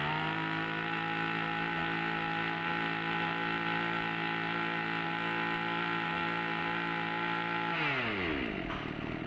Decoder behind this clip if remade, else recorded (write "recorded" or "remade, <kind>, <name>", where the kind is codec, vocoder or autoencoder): recorded